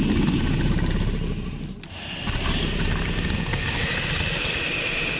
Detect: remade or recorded recorded